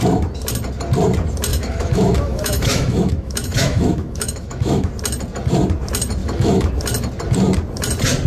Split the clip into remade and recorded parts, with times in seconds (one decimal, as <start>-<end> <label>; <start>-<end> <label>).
0.0-1.5 recorded; 1.5-4.9 remade; 4.9-6.2 recorded; 6.2-6.7 remade; 6.7-8.3 recorded